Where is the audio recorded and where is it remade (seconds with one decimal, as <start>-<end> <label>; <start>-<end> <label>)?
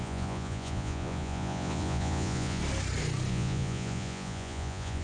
0.0-2.6 remade; 2.6-3.3 recorded; 3.3-5.0 remade